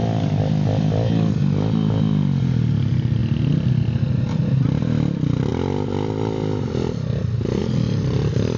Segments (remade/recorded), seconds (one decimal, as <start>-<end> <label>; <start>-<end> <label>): 0.0-1.3 remade; 1.3-8.6 recorded